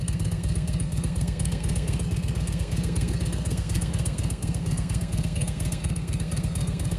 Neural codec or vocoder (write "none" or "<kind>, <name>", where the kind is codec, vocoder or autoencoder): codec, SNAC